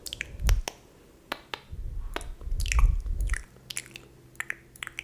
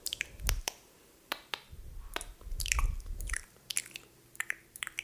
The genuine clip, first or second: first